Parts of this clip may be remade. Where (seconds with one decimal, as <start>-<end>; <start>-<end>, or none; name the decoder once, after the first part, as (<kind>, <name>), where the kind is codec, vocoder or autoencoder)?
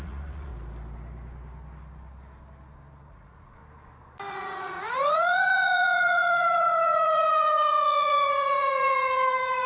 0.0-0.5 (vocoder, Vocos); 3.1-3.6; 4.3-9.7